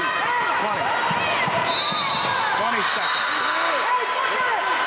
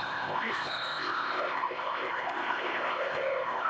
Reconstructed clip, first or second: second